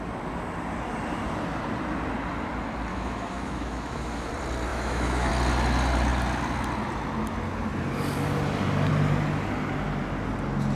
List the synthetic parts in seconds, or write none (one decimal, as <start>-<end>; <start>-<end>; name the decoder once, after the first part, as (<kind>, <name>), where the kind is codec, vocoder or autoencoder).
2.9-4.3 (autoencoder, DAC-VAE); 4.7-5.3